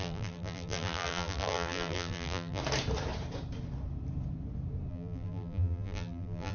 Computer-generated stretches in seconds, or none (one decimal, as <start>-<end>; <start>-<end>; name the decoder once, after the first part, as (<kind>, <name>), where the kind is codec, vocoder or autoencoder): 0.0-2.6 (vocoder, BigVGAN v2); 4.9-6.5